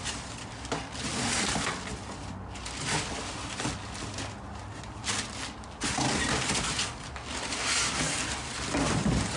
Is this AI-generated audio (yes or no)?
no